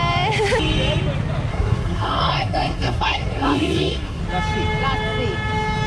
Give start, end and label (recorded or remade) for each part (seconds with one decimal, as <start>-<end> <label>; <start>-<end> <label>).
0.0-1.5 recorded; 1.5-4.2 remade; 4.2-5.9 recorded